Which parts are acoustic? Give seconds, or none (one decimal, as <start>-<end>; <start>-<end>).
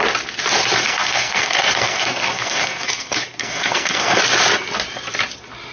0.0-0.8; 4.2-5.7